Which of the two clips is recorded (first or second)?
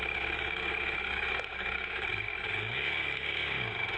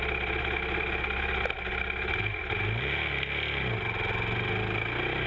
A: second